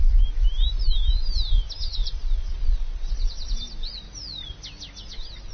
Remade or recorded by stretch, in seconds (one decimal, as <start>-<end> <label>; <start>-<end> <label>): 0.0-2.0 recorded; 2.0-3.5 remade; 3.5-5.5 recorded